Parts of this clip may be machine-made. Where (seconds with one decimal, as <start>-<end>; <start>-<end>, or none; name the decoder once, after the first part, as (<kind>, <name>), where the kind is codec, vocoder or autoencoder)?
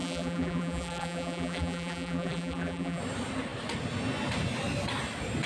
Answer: 0.0-3.0 (vocoder, BigVGAN v2)